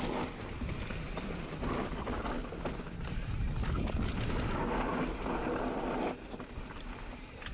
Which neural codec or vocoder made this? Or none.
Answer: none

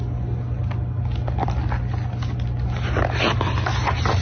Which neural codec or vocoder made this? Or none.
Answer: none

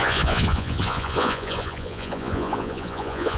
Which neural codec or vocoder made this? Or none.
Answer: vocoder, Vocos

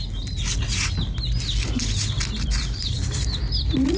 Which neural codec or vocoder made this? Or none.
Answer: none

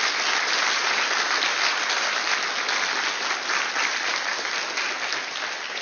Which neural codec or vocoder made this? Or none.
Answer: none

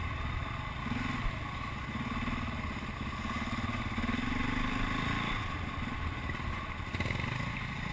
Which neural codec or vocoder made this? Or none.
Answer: none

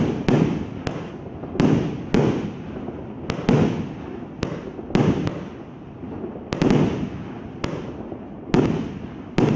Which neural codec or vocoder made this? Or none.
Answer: none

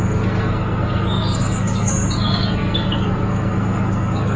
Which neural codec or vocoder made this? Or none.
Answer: codec, SNAC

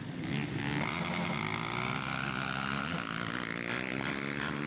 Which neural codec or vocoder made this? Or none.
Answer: none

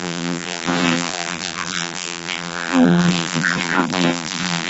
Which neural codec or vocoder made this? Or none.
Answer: vocoder, BigVGAN v2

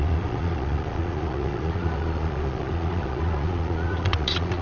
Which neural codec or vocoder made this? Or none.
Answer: vocoder, Vocos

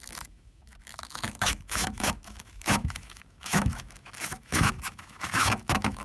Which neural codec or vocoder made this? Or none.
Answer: autoencoder, DAC-VAE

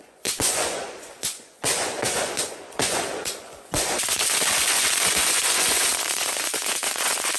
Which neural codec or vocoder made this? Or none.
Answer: vocoder, Vocos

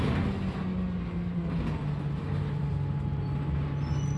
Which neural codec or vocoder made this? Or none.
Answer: none